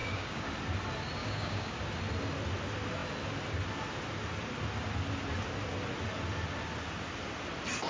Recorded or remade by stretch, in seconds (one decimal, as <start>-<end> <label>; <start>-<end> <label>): 0.0-0.5 remade; 0.5-1.2 recorded; 1.2-1.8 remade; 1.8-7.9 recorded